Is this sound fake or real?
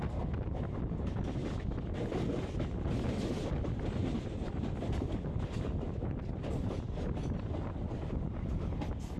real